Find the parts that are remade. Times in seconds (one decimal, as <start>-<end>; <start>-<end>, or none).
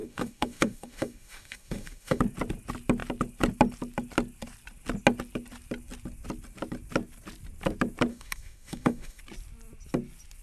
0.0-2.2; 8.1-9.2